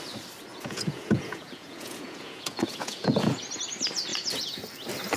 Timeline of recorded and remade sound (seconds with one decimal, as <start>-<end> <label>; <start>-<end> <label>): 0.0-0.5 recorded; 0.5-3.4 remade; 3.4-4.1 recorded; 4.1-4.6 remade; 4.6-5.2 recorded